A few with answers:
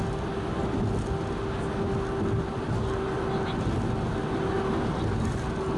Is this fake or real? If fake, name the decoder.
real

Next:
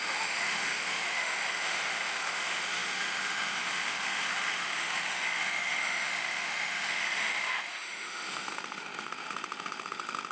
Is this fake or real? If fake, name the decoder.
fake, autoencoder, DAC-VAE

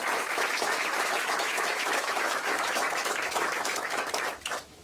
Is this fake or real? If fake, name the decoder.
fake, autoencoder, DAC-VAE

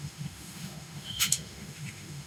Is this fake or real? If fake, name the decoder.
fake, autoencoder, DAC-VAE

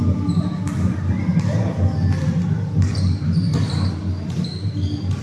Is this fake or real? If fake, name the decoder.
real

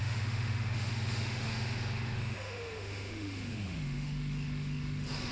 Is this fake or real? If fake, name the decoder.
fake, autoencoder, DAC-VAE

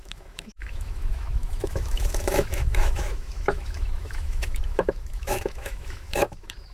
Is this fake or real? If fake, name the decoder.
fake, autoencoder, DAC-VAE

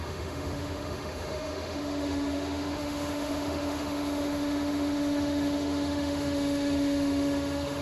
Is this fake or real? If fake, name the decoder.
fake, autoencoder, DAC-VAE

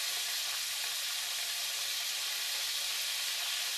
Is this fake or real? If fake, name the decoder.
real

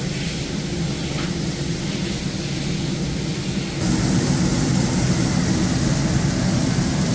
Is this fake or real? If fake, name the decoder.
real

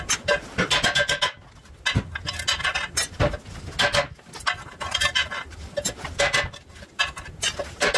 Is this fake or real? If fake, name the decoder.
real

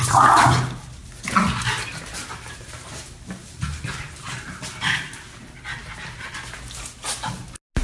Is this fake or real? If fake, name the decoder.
real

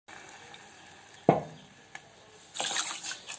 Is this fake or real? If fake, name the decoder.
real